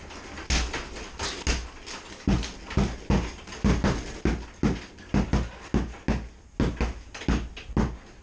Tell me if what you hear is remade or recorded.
recorded